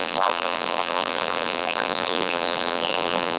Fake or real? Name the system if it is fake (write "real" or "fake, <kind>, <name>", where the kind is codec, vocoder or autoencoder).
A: fake, vocoder, BigVGAN v2